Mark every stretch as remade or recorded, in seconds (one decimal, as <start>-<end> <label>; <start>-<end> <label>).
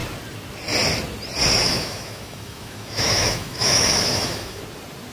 0.0-1.5 recorded; 1.5-4.6 remade; 4.6-5.1 recorded